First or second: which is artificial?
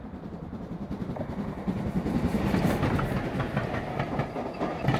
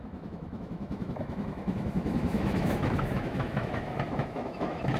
second